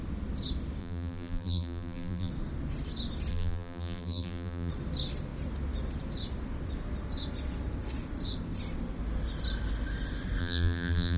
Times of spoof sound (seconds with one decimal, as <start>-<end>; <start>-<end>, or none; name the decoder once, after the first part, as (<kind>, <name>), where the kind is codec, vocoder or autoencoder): 0.8-2.3 (vocoder, BigVGAN v2); 3.3-4.7; 10.4-11.2